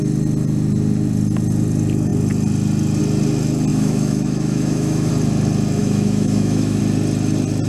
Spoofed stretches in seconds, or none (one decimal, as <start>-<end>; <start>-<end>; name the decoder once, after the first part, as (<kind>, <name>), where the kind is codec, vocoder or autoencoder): 3.7-5.1 (autoencoder, DAC-VAE); 5.8-6.8